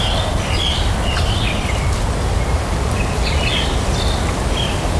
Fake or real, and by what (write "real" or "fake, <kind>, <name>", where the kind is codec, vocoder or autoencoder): real